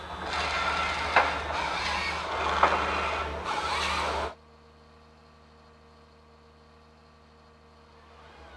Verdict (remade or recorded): recorded